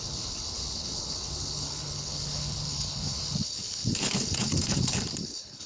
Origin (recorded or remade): remade